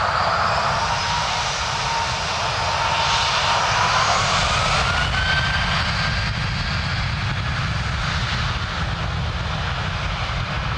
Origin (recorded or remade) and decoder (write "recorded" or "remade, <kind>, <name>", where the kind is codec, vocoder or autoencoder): recorded